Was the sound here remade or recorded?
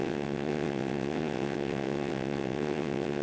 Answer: remade